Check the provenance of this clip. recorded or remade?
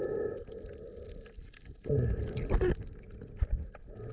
recorded